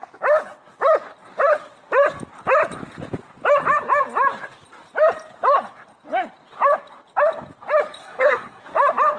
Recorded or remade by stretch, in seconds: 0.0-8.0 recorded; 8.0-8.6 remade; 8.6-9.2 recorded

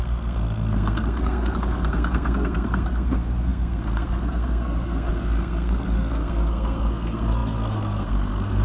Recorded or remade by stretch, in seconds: 0.0-8.6 remade

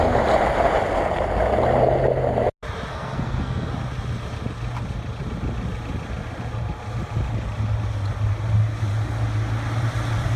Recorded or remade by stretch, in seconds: 0.0-2.9 recorded; 2.9-3.7 remade; 3.7-10.4 recorded

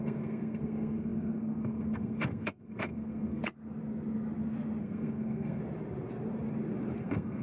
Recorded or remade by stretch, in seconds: 0.0-3.4 remade; 3.4-4.8 recorded; 4.8-5.6 remade; 5.6-7.0 recorded; 7.0-7.4 remade

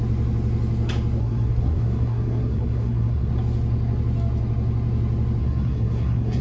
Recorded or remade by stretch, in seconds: 0.0-1.2 recorded; 1.2-3.3 remade; 3.3-5.4 recorded; 5.4-6.4 remade

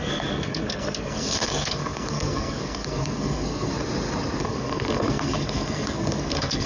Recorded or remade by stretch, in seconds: 0.0-3.7 remade; 3.7-4.4 recorded; 4.4-6.7 remade